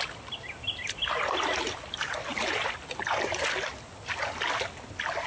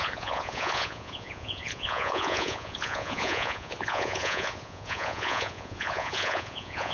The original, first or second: first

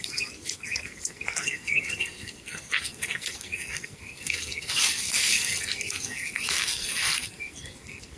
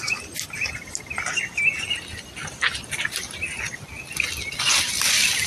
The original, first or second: second